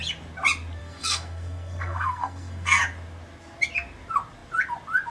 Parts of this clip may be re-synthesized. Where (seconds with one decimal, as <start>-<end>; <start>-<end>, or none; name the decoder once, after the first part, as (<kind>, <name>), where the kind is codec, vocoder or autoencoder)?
0.8-2.8 (codec, SNAC)